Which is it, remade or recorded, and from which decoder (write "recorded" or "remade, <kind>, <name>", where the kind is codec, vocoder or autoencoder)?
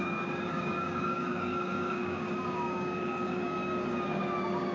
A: remade, codec, DAC